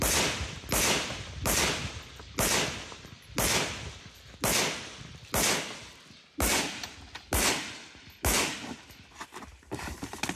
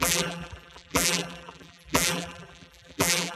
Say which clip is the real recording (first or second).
first